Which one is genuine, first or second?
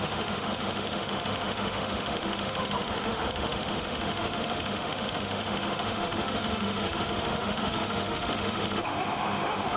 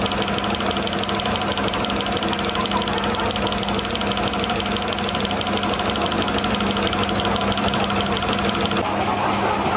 second